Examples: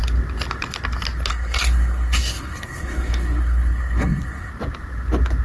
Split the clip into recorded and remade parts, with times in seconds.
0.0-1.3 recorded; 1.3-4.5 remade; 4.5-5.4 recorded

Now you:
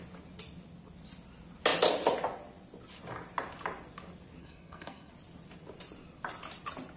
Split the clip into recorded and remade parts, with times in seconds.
0.0-4.4 recorded; 4.4-5.1 remade; 5.1-7.0 recorded

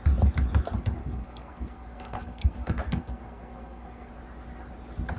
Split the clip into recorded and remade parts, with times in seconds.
0.0-1.0 recorded; 1.0-4.1 remade; 4.1-5.2 recorded

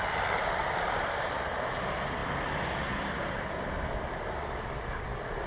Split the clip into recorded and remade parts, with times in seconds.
0.0-5.5 recorded

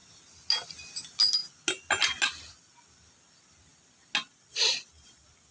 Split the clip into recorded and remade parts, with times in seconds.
0.0-5.5 recorded